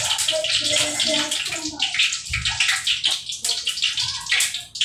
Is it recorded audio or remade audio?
recorded